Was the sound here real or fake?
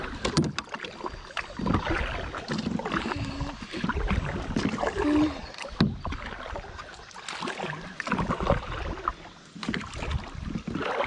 real